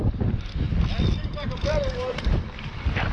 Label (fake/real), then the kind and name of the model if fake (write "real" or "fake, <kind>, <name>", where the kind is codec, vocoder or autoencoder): fake, vocoder, BigVGAN v2